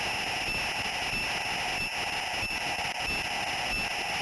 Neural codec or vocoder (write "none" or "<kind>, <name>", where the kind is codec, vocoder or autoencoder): none